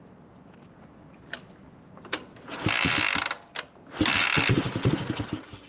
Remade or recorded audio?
recorded